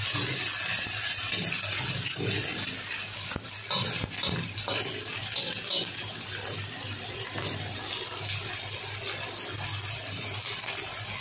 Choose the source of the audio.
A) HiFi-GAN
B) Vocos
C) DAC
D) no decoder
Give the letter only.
D